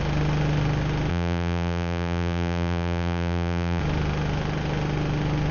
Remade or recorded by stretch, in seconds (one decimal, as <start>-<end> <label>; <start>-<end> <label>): 0.0-1.1 recorded; 1.1-3.8 remade; 3.8-5.5 recorded